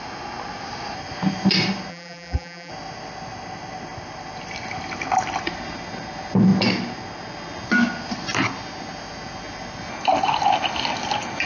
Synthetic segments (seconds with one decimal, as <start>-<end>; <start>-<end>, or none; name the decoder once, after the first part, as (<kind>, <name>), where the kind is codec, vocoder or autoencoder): 1.9-2.7 (vocoder, BigVGAN v2)